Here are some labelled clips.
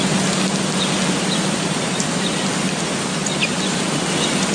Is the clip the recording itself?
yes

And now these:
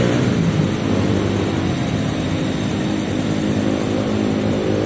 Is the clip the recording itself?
no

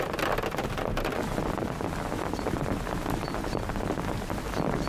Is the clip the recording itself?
yes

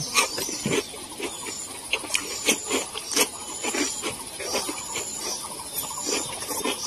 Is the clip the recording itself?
no